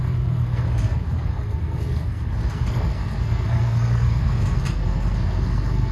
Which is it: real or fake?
fake